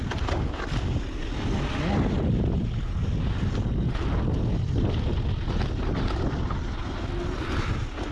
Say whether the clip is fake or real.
real